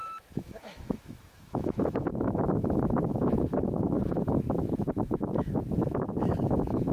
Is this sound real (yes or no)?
no